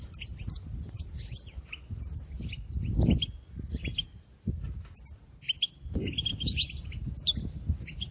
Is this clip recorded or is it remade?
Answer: recorded